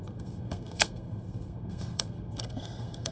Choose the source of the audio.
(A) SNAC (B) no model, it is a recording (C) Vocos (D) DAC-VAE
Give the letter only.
A